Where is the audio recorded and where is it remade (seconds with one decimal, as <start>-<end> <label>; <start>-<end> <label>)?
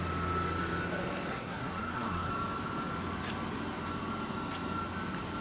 0.0-1.3 recorded; 1.3-2.3 remade; 2.3-5.4 recorded